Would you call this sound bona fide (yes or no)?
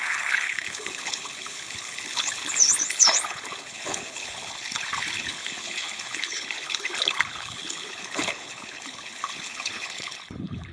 no